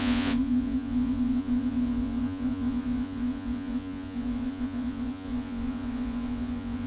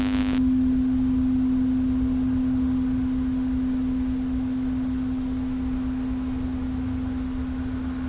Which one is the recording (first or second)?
second